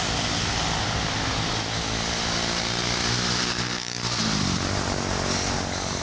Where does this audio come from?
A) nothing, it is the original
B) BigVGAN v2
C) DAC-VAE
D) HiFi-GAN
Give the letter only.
A